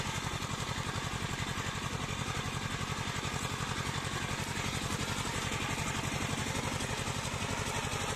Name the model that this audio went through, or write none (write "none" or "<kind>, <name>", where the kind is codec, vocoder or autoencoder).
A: none